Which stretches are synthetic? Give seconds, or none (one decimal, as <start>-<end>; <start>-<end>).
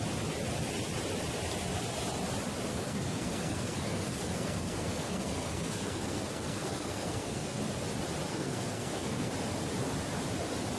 2.7-7.6; 8.3-9.3